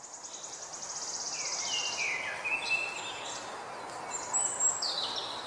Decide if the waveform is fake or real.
real